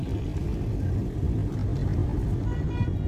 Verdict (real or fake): real